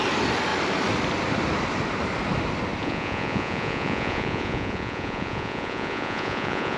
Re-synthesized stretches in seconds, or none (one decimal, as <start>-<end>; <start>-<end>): 2.8-6.8